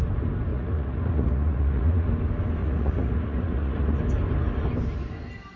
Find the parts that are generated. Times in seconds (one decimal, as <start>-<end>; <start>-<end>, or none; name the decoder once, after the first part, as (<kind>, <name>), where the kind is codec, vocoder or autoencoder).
0.5-2.1 (vocoder, Vocos); 2.6-4.0